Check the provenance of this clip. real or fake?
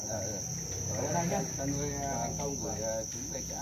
real